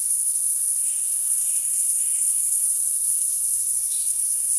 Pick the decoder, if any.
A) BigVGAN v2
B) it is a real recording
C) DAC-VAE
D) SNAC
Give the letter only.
D